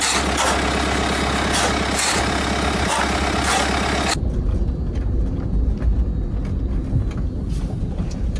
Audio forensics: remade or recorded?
recorded